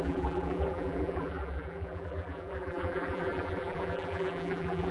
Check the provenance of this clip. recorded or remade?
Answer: remade